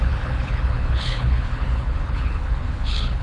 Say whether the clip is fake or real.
fake